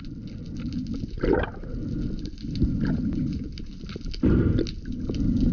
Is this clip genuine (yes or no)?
yes